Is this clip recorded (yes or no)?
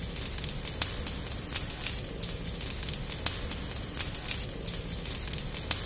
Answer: yes